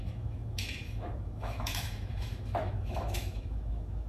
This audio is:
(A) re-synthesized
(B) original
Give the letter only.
A